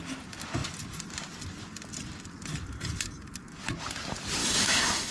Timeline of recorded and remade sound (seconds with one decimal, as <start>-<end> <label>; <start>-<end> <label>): 0.0-4.4 recorded; 4.4-5.1 remade

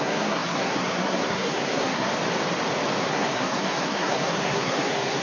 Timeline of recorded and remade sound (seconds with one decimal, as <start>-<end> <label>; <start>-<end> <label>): 0.0-2.1 remade; 2.1-3.0 recorded; 3.0-5.2 remade

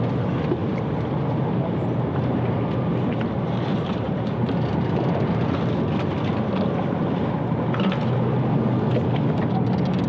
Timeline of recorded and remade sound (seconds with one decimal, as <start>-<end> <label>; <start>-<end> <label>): 0.0-0.6 recorded; 0.6-5.8 remade; 5.8-10.1 recorded

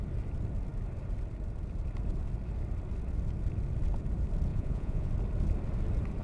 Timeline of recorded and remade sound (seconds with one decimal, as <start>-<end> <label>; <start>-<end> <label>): 0.0-4.5 recorded; 4.5-5.1 remade; 5.1-6.2 recorded

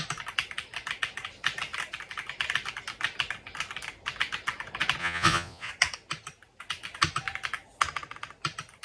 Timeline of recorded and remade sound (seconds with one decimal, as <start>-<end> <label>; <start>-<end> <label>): 0.0-5.0 recorded; 5.0-5.7 remade; 5.7-8.8 recorded